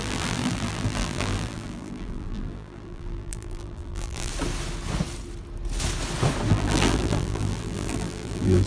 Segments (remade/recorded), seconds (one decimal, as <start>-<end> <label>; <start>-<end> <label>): 0.0-4.3 remade; 4.3-6.5 recorded; 6.5-8.7 remade